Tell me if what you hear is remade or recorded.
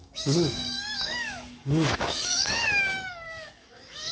remade